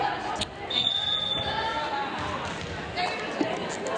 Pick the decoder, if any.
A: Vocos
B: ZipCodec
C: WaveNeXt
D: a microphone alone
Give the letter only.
D